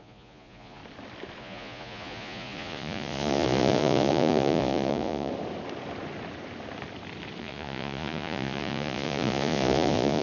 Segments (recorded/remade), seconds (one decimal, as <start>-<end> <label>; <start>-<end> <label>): 0.0-0.8 remade; 0.8-1.4 recorded; 1.4-5.3 remade; 5.3-7.4 recorded; 7.4-10.2 remade